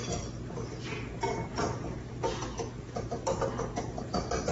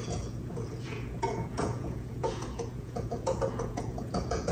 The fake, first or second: second